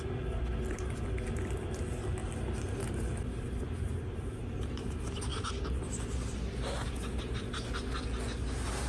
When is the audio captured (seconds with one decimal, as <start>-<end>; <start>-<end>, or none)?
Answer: 0.0-8.9